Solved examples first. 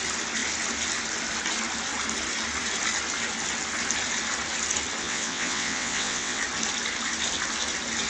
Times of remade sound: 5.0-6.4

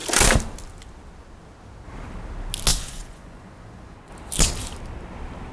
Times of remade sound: 2.7-4.1

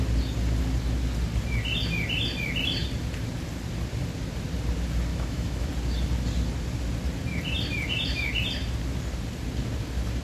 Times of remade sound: 5.1-5.7

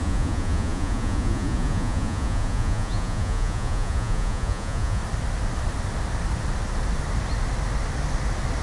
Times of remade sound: 0.0-5.0

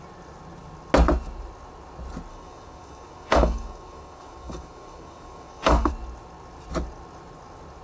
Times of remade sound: 2.3-5.9